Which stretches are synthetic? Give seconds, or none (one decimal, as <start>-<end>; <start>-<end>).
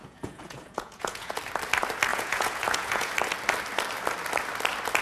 0.0-1.4; 2.1-3.1